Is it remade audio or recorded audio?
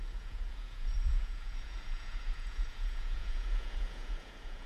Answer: remade